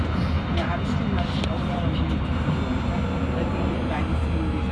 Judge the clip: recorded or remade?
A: recorded